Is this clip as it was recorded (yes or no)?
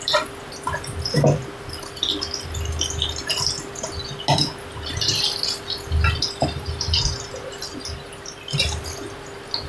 yes